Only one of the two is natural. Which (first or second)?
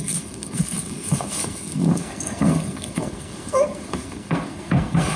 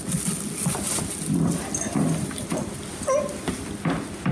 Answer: second